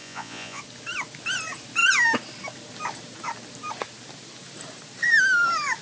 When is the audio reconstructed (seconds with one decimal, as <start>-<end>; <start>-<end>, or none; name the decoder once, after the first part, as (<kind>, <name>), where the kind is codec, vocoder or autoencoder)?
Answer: 0.0-0.6 (vocoder, Vocos)

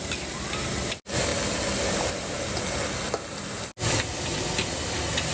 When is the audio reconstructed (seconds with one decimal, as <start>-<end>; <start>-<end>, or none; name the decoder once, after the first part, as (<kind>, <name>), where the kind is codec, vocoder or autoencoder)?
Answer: none

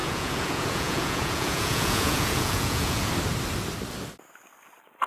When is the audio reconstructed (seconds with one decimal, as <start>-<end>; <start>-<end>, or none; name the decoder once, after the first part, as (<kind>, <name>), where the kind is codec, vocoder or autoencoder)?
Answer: 0.0-3.1 (vocoder, Vocos)

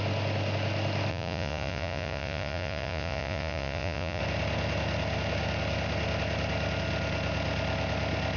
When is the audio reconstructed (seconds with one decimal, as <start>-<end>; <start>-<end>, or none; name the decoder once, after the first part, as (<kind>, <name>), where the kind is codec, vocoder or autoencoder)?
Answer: 1.1-4.2 (vocoder, Vocos)

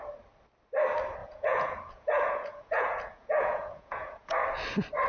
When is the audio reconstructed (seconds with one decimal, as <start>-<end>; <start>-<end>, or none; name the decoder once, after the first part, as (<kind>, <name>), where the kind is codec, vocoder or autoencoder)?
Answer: 1.2-4.3 (vocoder, Vocos)

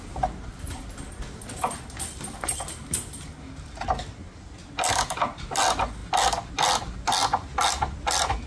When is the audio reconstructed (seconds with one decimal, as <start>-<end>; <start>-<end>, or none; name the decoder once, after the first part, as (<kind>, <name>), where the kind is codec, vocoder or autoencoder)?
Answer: none

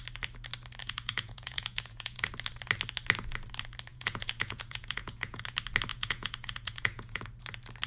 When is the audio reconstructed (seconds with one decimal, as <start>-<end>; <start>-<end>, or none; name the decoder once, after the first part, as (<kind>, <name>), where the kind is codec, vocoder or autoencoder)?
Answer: 0.8-2.3 (vocoder, Vocos); 3.9-5.4; 5.9-7.2